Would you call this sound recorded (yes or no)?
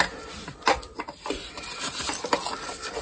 yes